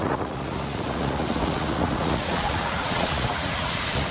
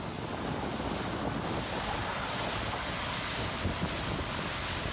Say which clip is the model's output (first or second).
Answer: first